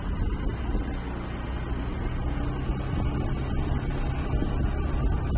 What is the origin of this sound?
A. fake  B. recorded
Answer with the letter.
B